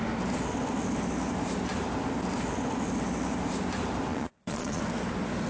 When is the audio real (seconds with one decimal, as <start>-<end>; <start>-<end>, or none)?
0.0-4.1; 4.8-5.5